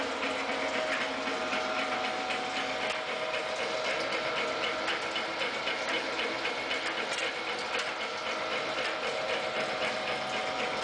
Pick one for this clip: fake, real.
real